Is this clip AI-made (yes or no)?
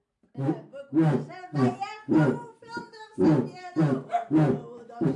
no